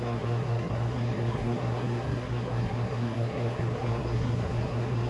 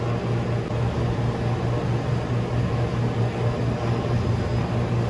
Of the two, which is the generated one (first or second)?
first